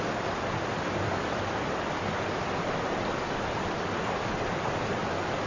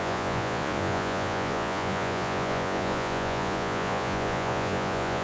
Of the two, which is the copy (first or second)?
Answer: second